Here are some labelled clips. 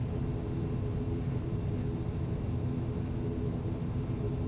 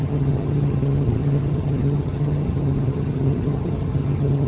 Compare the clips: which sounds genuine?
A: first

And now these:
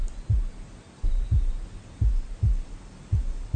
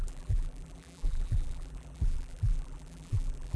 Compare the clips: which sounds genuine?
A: first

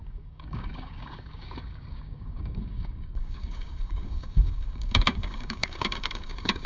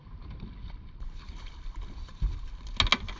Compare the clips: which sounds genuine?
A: second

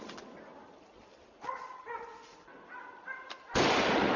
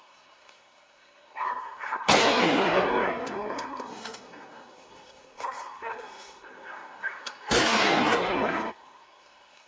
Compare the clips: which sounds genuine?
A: first